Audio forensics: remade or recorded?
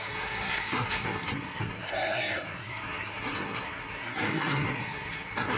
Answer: remade